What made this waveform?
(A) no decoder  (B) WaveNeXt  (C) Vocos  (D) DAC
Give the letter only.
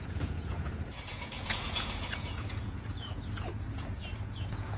C